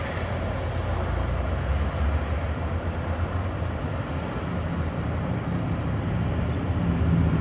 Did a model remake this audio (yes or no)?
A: no